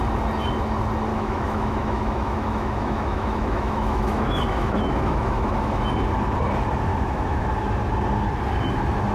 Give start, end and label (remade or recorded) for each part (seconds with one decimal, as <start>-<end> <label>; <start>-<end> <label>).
0.0-1.1 recorded; 1.1-5.9 remade; 5.9-6.9 recorded; 6.9-7.5 remade; 7.5-9.1 recorded